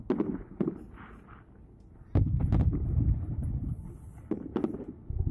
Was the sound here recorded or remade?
recorded